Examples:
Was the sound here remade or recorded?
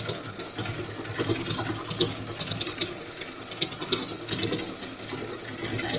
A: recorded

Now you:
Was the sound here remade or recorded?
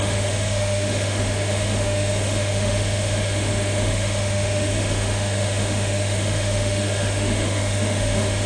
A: remade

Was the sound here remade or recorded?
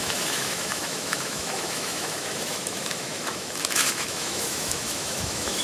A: remade